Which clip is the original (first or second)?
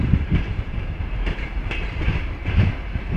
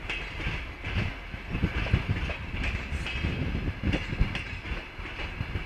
second